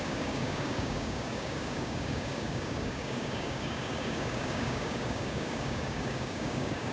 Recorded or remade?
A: remade